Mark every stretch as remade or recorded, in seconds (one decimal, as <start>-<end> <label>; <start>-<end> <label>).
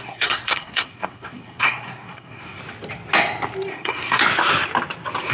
0.0-2.6 remade; 2.6-3.7 recorded; 3.7-4.2 remade; 4.2-5.3 recorded